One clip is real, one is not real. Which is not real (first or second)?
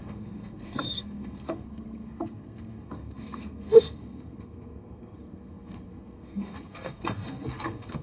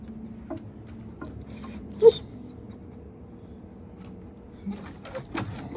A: first